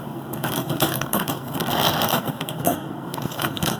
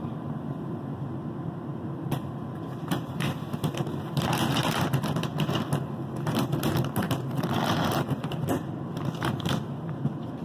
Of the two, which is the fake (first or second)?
first